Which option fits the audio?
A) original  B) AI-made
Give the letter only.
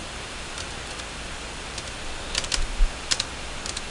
A